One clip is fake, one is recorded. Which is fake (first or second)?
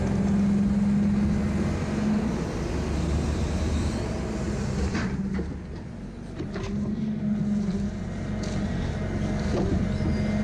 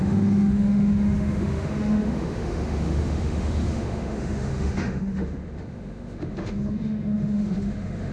second